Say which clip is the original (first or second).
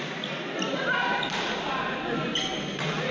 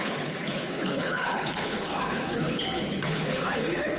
first